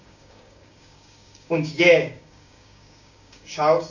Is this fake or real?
fake